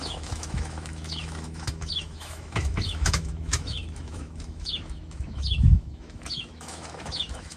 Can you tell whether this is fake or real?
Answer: fake